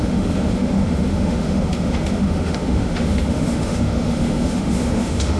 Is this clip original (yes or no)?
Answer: no